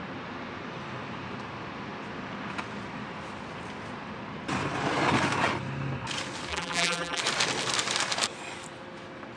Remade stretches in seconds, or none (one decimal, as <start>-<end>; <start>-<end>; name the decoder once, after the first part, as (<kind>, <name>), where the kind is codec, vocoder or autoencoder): 6.5-7.2 (vocoder, BigVGAN v2)